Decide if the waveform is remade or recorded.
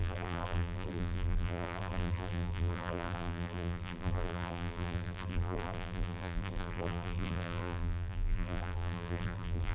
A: remade